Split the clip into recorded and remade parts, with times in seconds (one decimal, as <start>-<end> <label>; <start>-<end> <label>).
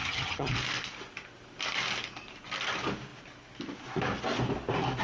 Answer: 0.0-0.5 remade; 0.5-5.0 recorded